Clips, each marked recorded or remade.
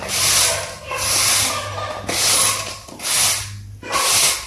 recorded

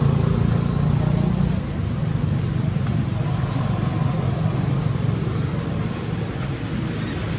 recorded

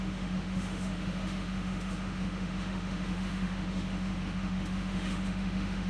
remade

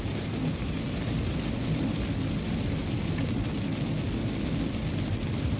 recorded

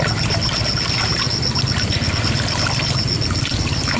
recorded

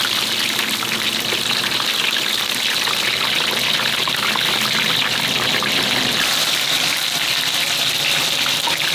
recorded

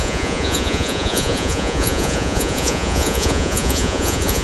remade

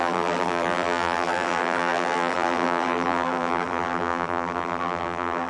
remade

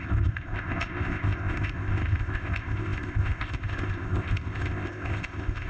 remade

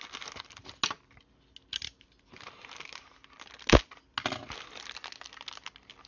recorded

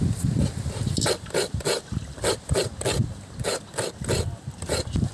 recorded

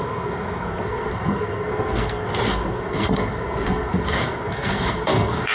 remade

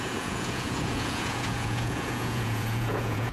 remade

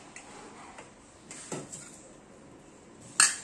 recorded